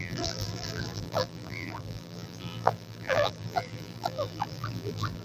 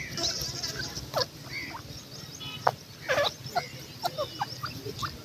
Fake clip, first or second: first